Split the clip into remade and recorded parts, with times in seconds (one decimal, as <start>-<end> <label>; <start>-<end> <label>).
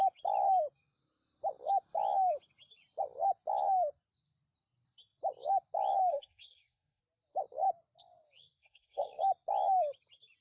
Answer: 0.0-6.1 recorded; 6.1-7.0 remade; 7.0-8.6 recorded; 8.6-9.2 remade; 9.2-10.4 recorded